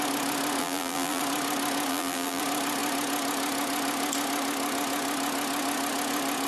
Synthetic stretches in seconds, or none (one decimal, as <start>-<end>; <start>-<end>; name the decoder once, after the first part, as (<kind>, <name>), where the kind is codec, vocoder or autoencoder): 0.6-1.2 (vocoder, BigVGAN v2); 1.9-2.4

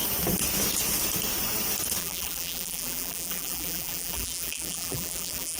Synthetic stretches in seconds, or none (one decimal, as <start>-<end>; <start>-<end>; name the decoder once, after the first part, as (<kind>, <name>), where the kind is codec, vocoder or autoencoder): 2.0-5.6 (vocoder, BigVGAN v2)

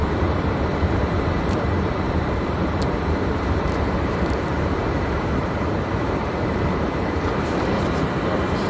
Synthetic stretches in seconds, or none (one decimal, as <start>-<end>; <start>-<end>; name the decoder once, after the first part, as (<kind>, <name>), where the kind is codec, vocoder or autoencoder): 0.0-8.7 (vocoder, BigVGAN v2)

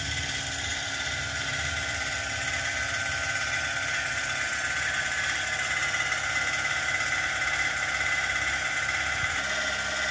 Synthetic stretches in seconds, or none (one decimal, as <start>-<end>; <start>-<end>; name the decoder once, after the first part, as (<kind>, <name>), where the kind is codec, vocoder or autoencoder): 0.7-2.9 (vocoder, BigVGAN v2)

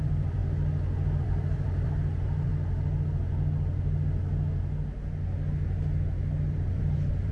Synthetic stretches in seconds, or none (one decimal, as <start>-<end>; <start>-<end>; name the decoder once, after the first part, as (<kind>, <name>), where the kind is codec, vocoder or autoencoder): 0.0-0.4 (vocoder, BigVGAN v2); 1.2-2.5; 6.5-7.3

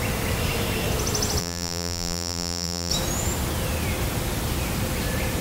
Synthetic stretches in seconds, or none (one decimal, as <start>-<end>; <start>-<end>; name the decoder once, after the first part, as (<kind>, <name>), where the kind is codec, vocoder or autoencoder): 1.4-2.9 (vocoder, BigVGAN v2)

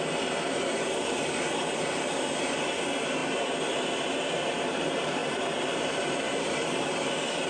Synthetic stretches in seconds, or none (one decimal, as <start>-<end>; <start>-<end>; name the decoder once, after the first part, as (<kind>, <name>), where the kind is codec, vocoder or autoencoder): 0.0-7.5 (vocoder, BigVGAN v2)